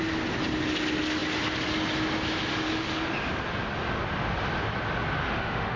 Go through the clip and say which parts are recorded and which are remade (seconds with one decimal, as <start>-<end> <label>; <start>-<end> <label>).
0.0-5.2 recorded; 5.2-5.8 remade